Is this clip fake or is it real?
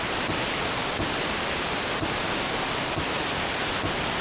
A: real